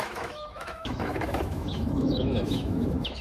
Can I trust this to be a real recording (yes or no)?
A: no